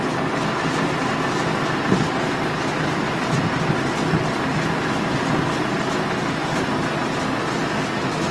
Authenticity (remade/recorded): recorded